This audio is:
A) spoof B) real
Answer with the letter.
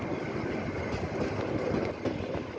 B